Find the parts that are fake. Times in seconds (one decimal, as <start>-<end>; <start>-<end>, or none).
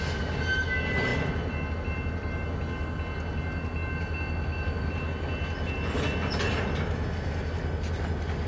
none